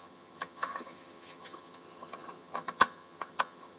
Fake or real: fake